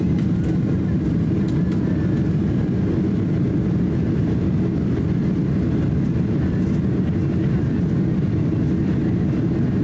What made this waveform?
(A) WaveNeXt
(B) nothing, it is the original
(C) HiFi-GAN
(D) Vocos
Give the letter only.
B